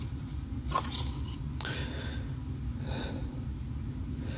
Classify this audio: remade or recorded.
recorded